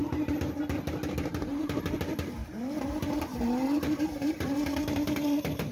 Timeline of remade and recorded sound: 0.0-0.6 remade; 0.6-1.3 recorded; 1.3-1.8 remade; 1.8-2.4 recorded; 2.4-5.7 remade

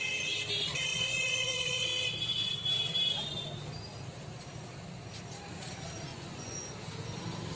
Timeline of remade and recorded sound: 0.0-0.9 recorded; 0.9-1.9 remade; 1.9-6.1 recorded; 6.1-6.7 remade; 6.7-7.6 recorded

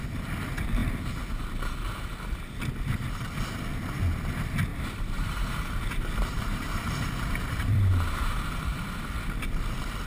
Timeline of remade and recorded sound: 0.0-4.7 recorded; 4.7-8.4 remade; 8.4-10.1 recorded

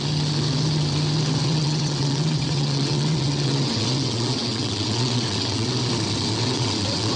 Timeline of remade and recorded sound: 0.0-1.4 recorded; 1.4-5.7 remade; 5.7-6.4 recorded; 6.4-7.2 remade

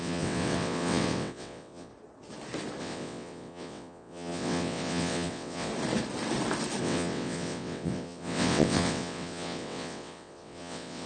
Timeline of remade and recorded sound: 0.0-1.9 remade; 1.9-2.8 recorded; 2.8-5.7 remade; 5.7-6.8 recorded; 6.8-11.1 remade